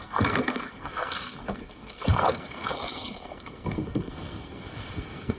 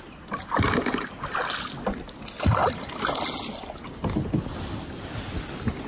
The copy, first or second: first